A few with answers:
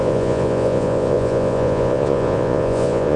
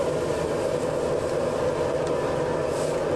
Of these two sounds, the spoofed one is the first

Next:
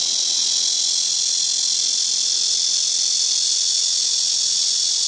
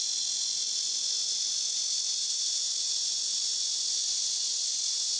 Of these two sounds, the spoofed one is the second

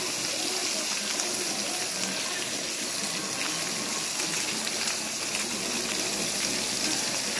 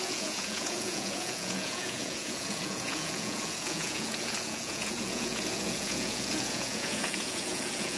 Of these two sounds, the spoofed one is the second